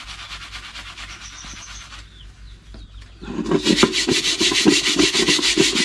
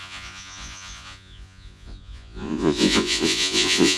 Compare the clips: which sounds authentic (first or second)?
first